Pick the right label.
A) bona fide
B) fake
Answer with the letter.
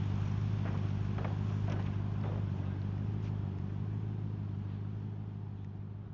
A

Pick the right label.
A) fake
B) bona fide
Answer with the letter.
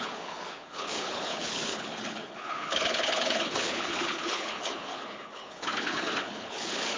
A